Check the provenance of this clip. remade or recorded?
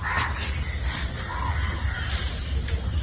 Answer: recorded